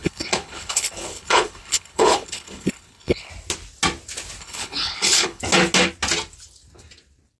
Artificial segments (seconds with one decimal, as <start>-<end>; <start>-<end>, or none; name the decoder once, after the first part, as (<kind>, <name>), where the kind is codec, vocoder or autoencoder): 0.0-3.3 (codec, HILCodec); 4.4-5.4